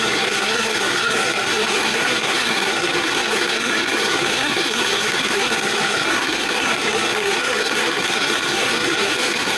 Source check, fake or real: fake